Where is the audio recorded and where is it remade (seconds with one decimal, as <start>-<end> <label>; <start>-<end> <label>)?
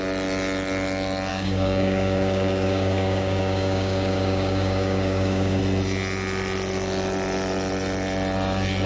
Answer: 0.0-1.3 recorded; 1.3-5.6 remade; 5.6-8.9 recorded